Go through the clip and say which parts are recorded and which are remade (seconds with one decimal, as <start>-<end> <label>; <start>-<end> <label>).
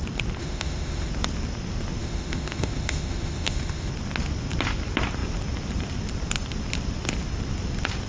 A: 0.0-0.4 recorded; 0.4-1.1 remade; 1.1-2.0 recorded; 2.0-3.9 remade; 3.9-8.1 recorded